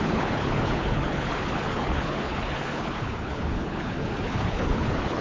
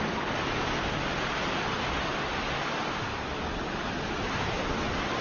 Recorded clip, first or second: second